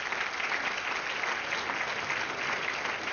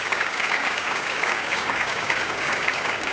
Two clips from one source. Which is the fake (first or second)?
second